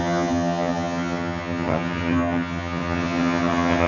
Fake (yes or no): yes